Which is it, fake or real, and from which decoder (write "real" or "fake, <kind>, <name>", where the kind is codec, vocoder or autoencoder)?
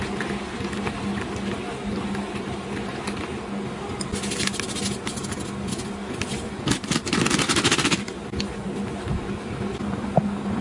real